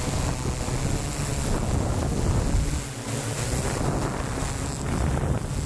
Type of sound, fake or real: real